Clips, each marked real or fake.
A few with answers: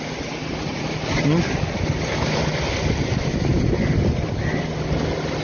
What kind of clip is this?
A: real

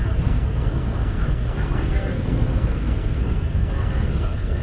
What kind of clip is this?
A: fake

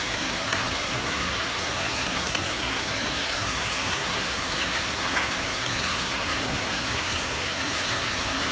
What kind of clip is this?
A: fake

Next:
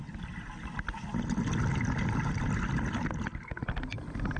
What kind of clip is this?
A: real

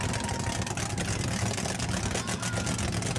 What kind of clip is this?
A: real